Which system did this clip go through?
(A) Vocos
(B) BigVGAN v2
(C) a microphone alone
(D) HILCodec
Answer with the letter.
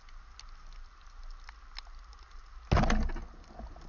C